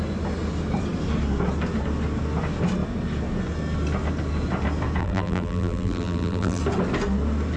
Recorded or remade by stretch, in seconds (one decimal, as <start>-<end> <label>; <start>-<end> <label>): 0.0-5.0 recorded; 5.0-6.6 remade; 6.6-7.6 recorded